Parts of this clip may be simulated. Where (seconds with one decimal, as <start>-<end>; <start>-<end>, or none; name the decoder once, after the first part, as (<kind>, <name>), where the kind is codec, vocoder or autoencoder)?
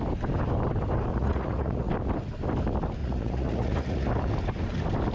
1.1-1.9 (vocoder, Vocos); 3.0-4.1